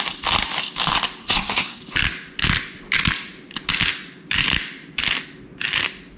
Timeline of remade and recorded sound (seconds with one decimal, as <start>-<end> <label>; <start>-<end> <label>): 0.0-1.2 recorded; 1.2-1.8 remade; 1.8-6.2 recorded